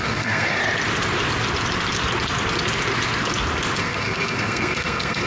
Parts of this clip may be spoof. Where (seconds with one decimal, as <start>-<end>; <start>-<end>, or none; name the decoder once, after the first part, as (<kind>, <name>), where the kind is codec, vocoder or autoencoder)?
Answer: 0.0-0.6 (codec, SNAC); 3.8-5.3